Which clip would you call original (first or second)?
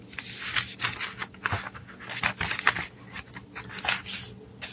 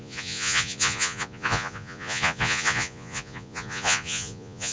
first